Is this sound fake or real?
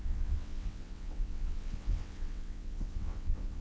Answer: fake